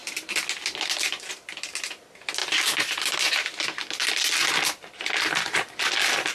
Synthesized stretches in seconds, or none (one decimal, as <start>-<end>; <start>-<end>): none